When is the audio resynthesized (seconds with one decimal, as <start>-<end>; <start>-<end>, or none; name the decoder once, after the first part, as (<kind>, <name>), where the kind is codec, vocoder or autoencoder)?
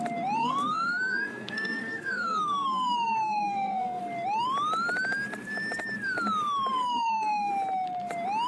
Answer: 0.4-4.0 (codec, SNAC); 6.7-7.5